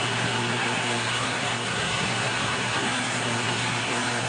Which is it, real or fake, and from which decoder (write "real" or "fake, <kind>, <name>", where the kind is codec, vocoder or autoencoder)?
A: fake, codec, SNAC